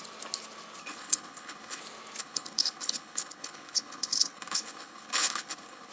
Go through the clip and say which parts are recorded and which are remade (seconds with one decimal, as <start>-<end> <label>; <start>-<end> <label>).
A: 0.0-0.8 recorded; 0.8-1.8 remade; 1.8-2.2 recorded; 2.2-5.9 remade

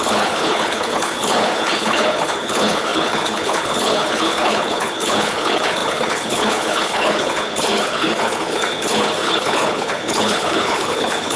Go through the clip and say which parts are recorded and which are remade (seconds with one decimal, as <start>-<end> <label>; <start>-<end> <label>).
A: 0.0-11.4 remade

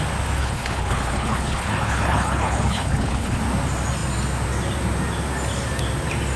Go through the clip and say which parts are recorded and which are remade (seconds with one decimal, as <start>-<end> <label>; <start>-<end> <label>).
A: 0.0-0.4 recorded; 0.4-3.4 remade; 3.4-6.4 recorded

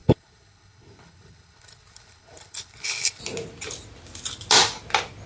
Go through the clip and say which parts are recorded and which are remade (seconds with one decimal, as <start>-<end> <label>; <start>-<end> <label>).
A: 0.0-3.2 remade; 3.2-5.3 recorded

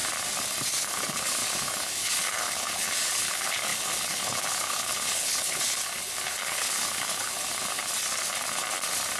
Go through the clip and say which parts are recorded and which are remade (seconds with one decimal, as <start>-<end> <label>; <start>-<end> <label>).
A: 0.0-0.8 recorded; 0.8-7.8 remade; 7.8-9.2 recorded

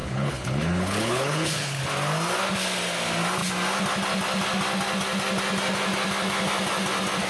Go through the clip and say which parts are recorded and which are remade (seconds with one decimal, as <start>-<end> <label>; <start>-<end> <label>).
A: 0.0-1.8 remade; 1.8-7.3 recorded